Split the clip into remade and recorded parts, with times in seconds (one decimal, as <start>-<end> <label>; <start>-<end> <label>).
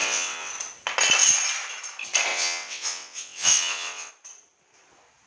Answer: 0.0-0.5 remade; 0.5-2.3 recorded; 2.3-4.1 remade; 4.1-5.3 recorded